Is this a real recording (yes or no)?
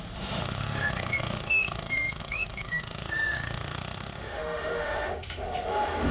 no